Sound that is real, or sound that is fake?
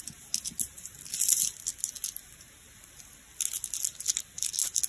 real